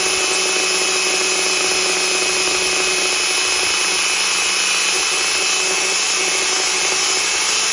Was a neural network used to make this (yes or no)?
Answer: no